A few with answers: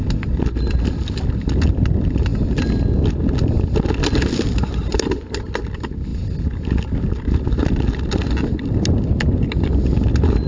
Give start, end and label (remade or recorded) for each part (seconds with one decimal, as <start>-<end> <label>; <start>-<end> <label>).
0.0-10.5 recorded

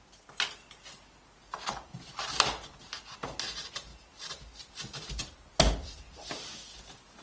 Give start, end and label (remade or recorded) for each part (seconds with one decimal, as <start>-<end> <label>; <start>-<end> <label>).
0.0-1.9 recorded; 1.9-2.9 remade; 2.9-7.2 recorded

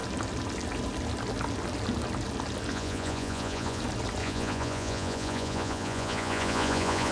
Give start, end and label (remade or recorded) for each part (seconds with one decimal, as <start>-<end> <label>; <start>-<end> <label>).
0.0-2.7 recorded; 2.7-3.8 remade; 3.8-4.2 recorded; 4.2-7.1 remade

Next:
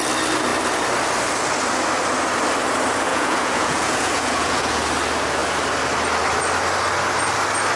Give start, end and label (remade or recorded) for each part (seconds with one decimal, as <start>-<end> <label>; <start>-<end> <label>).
0.0-3.1 recorded; 3.1-4.8 remade; 4.8-7.8 recorded

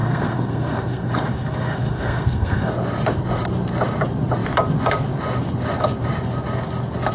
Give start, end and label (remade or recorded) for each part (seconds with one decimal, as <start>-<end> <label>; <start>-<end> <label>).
0.0-2.7 remade; 2.7-7.1 recorded

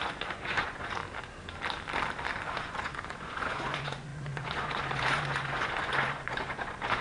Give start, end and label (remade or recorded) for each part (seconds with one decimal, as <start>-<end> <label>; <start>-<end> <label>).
0.0-1.0 remade; 1.0-2.6 recorded; 2.6-7.0 remade

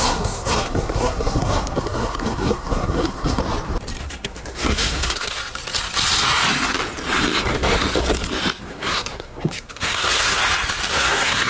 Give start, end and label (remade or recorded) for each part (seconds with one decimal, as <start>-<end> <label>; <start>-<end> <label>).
0.0-3.4 remade; 3.4-4.0 recorded; 4.0-5.4 remade; 5.4-8.7 recorded; 8.7-10.4 remade; 10.4-10.9 recorded; 10.9-11.5 remade

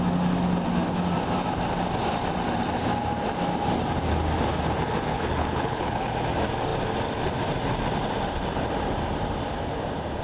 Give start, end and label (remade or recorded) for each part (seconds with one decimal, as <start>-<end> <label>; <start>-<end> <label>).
0.0-5.1 recorded; 5.1-6.1 remade; 6.1-10.2 recorded